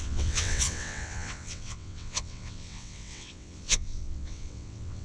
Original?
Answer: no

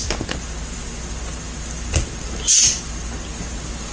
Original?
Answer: yes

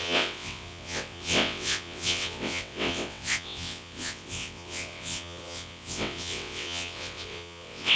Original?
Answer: no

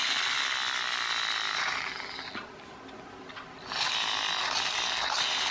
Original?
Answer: yes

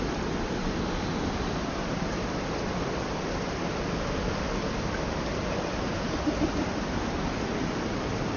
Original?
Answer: yes